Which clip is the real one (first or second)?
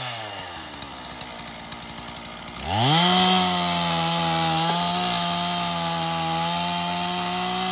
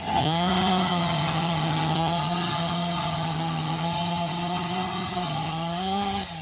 first